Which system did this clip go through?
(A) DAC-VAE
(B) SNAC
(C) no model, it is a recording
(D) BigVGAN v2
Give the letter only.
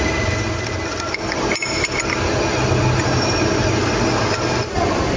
C